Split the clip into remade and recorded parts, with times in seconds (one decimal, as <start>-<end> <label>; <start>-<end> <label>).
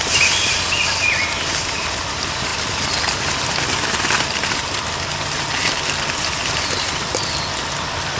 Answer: 0.0-8.2 recorded